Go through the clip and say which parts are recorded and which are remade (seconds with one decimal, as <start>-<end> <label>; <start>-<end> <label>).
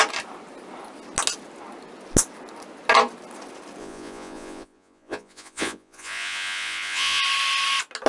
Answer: 0.0-3.8 recorded; 3.8-7.2 remade; 7.2-8.1 recorded